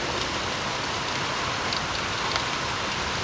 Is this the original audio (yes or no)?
yes